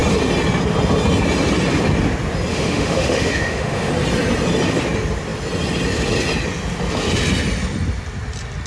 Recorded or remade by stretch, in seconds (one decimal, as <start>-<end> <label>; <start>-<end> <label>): 0.0-2.5 recorded; 2.5-3.9 remade; 3.9-8.7 recorded